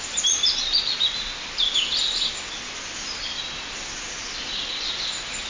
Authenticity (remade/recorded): recorded